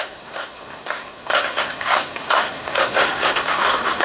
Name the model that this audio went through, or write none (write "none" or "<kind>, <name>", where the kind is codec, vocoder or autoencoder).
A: codec, SNAC